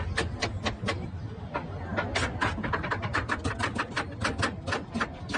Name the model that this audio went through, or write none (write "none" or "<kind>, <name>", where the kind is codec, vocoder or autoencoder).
none